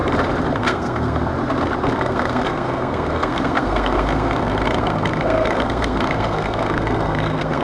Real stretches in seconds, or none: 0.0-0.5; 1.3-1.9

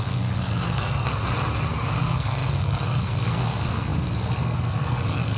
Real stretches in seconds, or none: 1.1-1.7